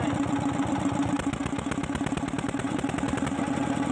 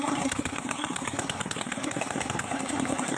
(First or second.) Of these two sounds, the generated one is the second